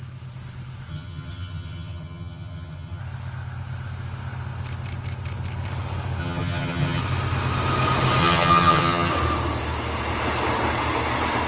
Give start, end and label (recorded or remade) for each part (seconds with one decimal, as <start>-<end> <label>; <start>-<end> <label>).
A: 0.0-0.9 recorded; 0.9-3.0 remade; 3.0-6.2 recorded; 6.2-7.0 remade; 7.0-8.2 recorded; 8.2-9.1 remade; 9.1-11.5 recorded